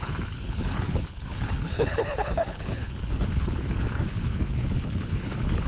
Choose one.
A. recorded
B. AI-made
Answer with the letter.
B